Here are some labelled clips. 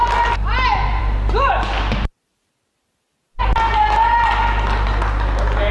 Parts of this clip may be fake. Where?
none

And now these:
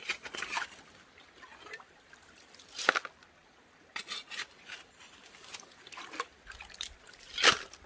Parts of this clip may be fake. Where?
none